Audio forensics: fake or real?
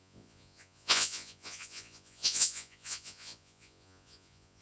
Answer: fake